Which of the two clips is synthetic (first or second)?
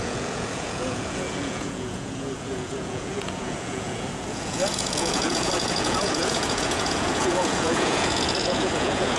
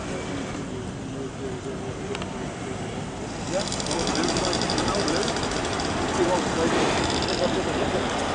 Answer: first